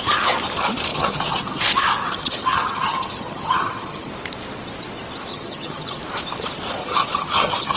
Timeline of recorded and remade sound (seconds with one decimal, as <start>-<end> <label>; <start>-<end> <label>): 0.0-0.9 recorded; 0.9-1.6 remade; 1.6-2.0 recorded; 2.0-4.1 remade; 4.1-5.3 recorded; 5.3-6.0 remade; 6.0-6.8 recorded; 6.8-7.8 remade

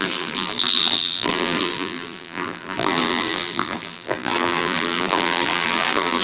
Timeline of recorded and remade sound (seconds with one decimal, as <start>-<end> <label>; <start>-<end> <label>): 0.0-6.2 remade

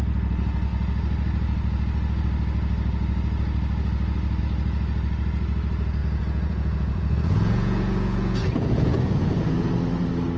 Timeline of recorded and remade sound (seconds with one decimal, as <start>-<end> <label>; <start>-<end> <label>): 0.0-6.0 recorded; 6.0-9.7 remade; 9.7-10.4 recorded

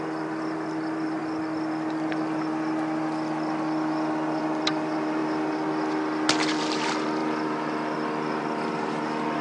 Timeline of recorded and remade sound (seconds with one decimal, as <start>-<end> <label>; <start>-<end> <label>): 0.0-1.2 remade; 1.2-4.4 recorded; 4.4-5.2 remade; 5.2-6.6 recorded; 6.6-9.4 remade